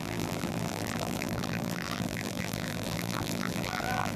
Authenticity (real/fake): fake